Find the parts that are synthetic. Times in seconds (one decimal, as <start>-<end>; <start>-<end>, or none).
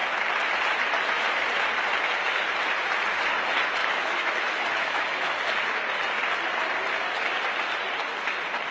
3.8-5.4